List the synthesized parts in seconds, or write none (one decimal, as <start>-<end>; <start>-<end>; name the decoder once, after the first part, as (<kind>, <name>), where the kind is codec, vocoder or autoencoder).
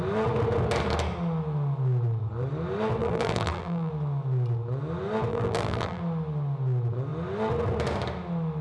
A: 3.0-3.9 (vocoder, BigVGAN v2); 5.3-6.0